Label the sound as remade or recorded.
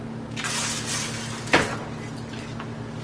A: recorded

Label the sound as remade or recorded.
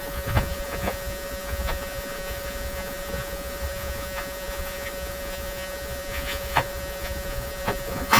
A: remade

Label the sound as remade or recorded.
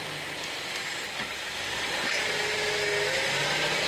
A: recorded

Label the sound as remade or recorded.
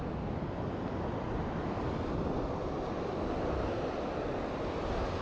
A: recorded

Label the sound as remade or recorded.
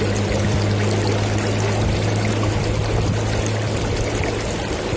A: recorded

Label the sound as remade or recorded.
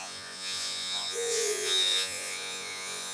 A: remade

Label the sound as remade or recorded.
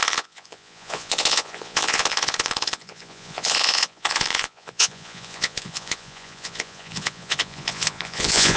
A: remade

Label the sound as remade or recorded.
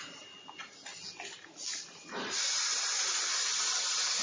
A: recorded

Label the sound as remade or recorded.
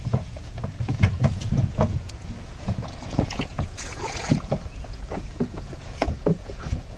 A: remade